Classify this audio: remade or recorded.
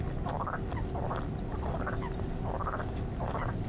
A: recorded